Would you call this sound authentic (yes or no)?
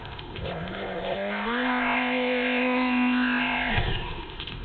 no